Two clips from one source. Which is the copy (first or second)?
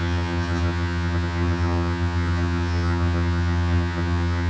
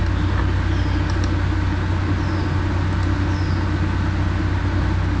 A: first